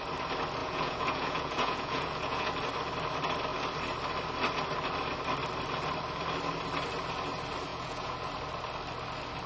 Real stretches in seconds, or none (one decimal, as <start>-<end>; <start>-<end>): 0.0-0.6; 2.5-7.7; 8.3-9.5

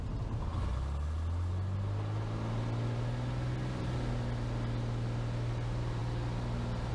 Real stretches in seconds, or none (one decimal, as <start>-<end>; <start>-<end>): 0.0-6.9

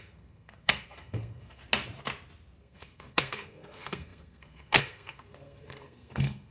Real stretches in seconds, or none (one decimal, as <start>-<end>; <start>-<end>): 1.6-2.6

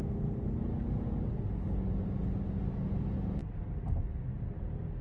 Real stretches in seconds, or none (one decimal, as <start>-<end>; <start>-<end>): 0.0-5.0

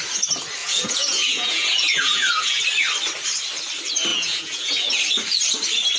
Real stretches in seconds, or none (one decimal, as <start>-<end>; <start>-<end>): 0.0-0.6; 2.6-4.1; 4.9-6.0

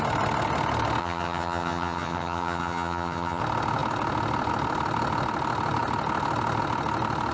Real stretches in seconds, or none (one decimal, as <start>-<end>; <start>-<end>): 0.0-1.0; 3.4-7.3

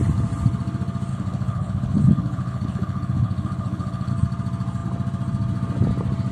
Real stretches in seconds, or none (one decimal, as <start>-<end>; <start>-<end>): 0.0-1.1; 4.1-6.3